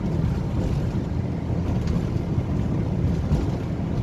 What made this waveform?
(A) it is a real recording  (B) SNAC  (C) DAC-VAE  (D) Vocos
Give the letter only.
A